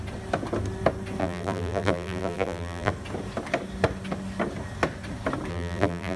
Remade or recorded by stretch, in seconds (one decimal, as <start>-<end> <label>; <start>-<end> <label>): 0.0-1.2 recorded; 1.2-2.9 remade; 2.9-5.5 recorded; 5.5-6.2 remade